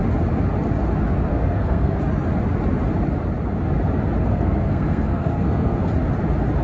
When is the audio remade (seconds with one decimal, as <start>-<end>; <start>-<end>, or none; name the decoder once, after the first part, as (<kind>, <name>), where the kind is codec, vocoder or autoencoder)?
1.3-2.0 (codec, SNAC); 4.3-5.8